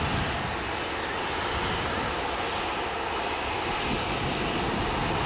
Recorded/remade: recorded